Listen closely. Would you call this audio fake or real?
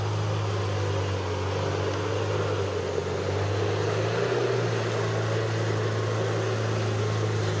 real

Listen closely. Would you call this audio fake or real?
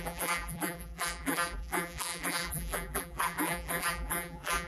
fake